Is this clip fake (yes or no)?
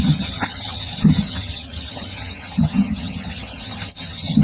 yes